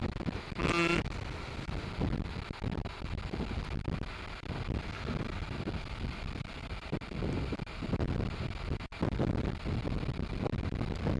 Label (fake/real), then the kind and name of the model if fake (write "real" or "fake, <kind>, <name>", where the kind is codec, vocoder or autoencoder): real